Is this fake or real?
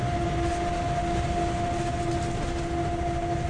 real